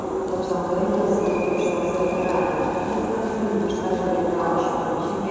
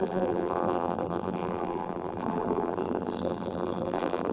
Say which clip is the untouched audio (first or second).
first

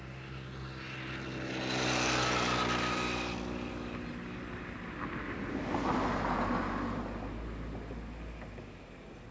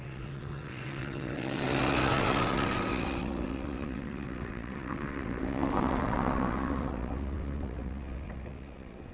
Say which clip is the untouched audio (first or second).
first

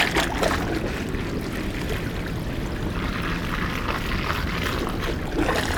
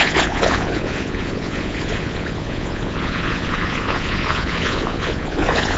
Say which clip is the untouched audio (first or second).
first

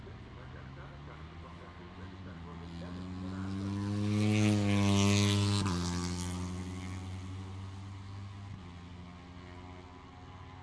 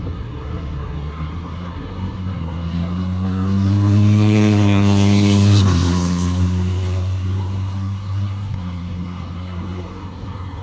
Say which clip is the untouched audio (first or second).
first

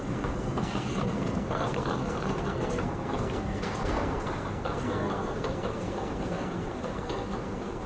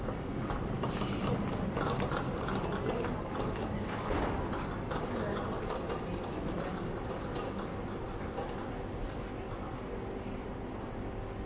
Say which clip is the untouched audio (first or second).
second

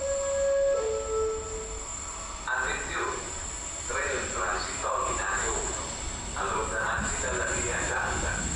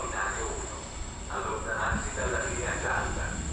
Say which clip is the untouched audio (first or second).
first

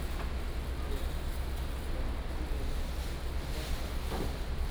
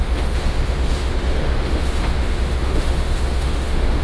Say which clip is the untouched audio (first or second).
first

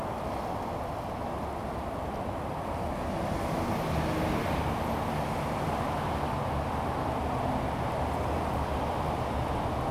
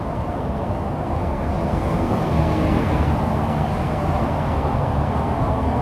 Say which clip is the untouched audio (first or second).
first